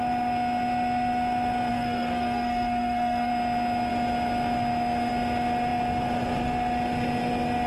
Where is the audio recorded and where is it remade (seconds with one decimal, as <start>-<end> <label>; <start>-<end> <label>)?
0.0-1.7 recorded; 1.7-3.3 remade; 3.3-7.7 recorded